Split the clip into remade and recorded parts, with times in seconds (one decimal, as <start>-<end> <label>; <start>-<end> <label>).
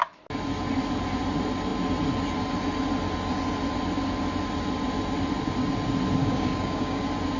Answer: 0.0-6.2 recorded; 6.2-7.0 remade; 7.0-7.4 recorded